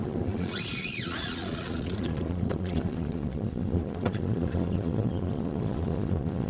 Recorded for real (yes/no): no